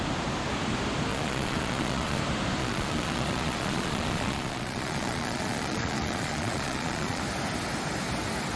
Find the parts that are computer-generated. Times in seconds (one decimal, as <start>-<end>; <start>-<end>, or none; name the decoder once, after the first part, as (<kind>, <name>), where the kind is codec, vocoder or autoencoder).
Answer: 1.1-2.2 (vocoder, Vocos); 2.6-7.2